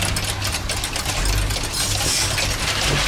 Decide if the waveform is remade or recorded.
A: recorded